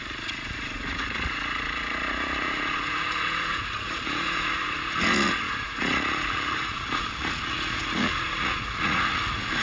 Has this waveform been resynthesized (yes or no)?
yes